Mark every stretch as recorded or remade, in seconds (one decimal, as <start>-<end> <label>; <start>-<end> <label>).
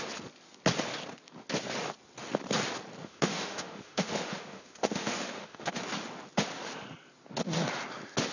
0.0-3.0 recorded; 3.0-5.7 remade; 5.7-8.3 recorded